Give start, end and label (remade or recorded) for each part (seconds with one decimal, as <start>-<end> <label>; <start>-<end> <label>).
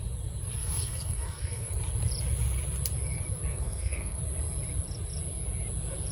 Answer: 0.0-0.6 recorded; 0.6-1.7 remade; 1.7-3.5 recorded; 3.5-4.2 remade; 4.2-6.1 recorded